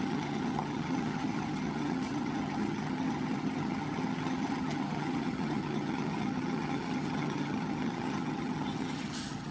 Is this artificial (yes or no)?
yes